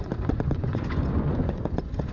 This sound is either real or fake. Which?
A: fake